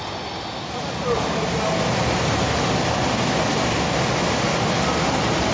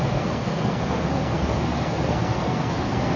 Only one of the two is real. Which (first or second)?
first